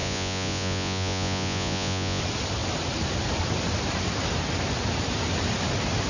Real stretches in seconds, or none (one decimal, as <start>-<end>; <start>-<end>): 2.2-6.1